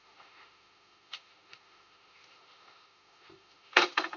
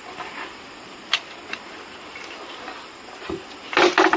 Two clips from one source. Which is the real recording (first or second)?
second